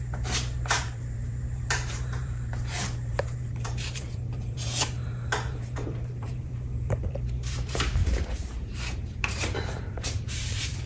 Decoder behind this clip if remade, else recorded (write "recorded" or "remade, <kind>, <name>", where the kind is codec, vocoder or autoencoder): remade, vocoder, BigVGAN v2